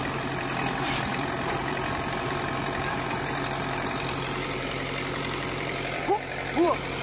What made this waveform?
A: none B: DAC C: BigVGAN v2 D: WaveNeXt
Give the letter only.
C